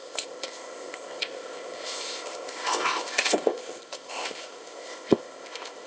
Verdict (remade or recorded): remade